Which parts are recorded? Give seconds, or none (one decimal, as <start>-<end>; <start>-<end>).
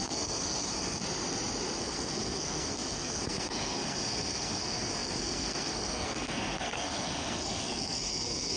1.0-1.8